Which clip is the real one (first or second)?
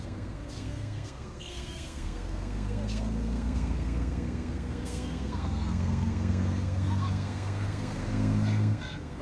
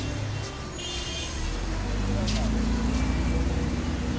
second